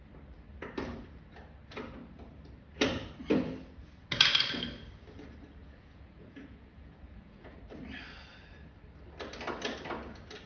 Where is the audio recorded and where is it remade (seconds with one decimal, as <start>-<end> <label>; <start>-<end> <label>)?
0.0-5.6 recorded; 5.6-7.6 remade; 7.6-10.5 recorded